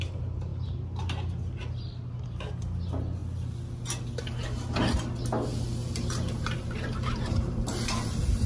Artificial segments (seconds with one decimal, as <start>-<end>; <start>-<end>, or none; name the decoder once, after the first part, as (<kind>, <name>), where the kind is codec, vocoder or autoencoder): 5.8-8.5 (vocoder, BigVGAN v2)